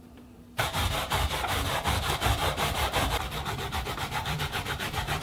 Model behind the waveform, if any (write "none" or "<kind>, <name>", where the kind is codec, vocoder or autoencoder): vocoder, BigVGAN v2